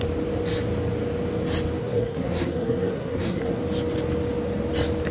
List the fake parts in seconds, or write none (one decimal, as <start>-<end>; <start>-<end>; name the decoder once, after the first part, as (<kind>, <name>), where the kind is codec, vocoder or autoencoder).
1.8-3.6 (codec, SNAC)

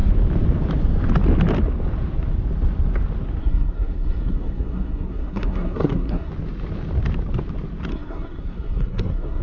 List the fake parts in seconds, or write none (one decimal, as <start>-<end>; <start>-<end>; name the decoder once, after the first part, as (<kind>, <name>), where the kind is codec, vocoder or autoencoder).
3.4-6.3 (codec, SNAC); 7.9-9.4

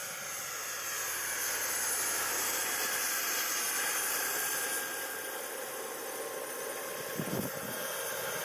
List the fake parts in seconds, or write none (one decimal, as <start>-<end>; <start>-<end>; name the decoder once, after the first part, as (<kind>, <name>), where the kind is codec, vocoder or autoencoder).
none

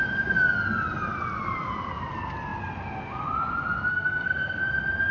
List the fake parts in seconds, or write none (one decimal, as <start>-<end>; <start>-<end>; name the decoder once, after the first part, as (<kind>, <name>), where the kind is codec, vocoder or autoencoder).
3.9-4.6 (codec, SNAC)